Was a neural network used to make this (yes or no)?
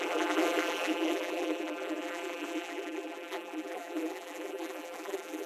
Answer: yes